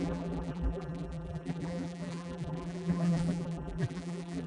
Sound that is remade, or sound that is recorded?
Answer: remade